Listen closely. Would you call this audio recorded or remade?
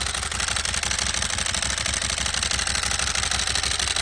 recorded